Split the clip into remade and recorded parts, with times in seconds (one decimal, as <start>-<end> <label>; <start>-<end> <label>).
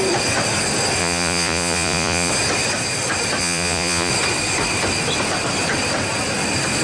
0.0-1.0 recorded; 1.0-2.3 remade; 2.3-3.4 recorded; 3.4-4.1 remade; 4.1-6.8 recorded